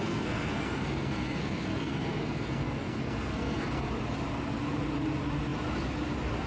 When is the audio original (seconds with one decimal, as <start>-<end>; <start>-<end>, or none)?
3.9-6.5